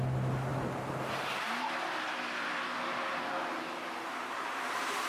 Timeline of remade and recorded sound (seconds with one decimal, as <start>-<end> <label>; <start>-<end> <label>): 0.0-5.1 recorded